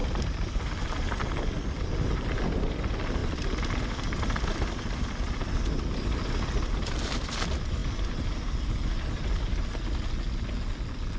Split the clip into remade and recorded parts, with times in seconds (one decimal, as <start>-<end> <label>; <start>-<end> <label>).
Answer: 0.0-3.2 recorded; 3.2-4.2 remade; 4.2-11.2 recorded